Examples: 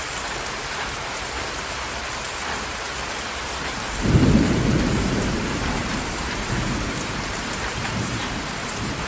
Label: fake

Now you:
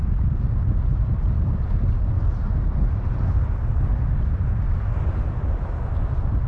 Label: real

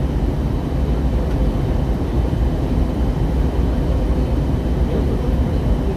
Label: real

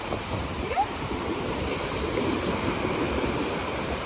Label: fake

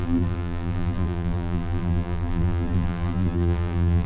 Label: fake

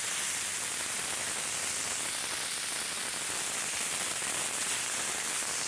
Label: real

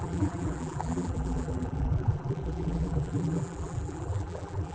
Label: fake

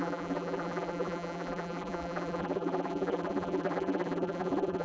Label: fake